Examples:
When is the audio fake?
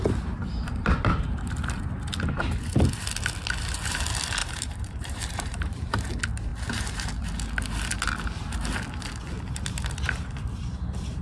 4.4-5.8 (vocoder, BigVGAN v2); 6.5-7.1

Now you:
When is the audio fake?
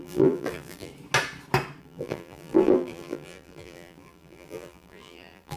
0.0-0.9 (vocoder, BigVGAN v2); 1.8-5.6